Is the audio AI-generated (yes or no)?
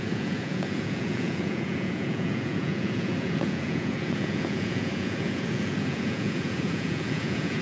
yes